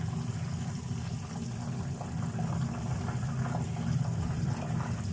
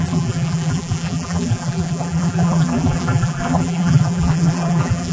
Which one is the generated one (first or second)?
second